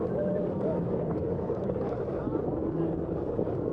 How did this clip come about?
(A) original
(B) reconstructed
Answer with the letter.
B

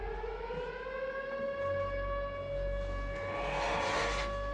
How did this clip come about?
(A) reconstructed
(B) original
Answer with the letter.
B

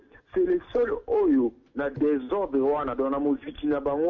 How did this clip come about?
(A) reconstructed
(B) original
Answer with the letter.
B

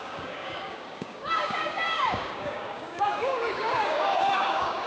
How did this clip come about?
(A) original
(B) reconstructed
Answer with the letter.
B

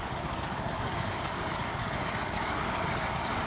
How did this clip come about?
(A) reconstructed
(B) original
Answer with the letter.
A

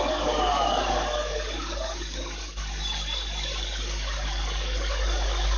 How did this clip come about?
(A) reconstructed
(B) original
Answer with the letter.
A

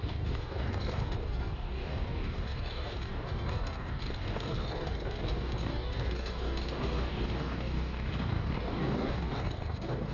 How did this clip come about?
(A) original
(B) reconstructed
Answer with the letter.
B